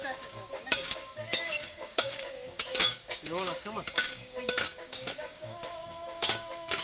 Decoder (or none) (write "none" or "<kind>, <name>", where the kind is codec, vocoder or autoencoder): codec, DAC